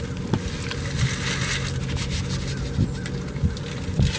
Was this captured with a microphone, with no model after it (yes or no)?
yes